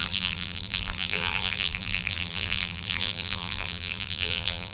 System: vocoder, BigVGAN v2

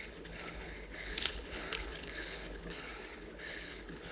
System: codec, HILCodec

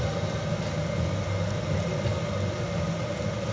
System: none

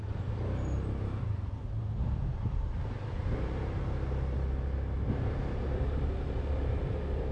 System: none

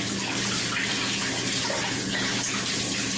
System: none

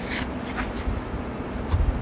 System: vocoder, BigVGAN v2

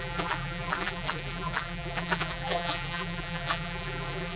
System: vocoder, BigVGAN v2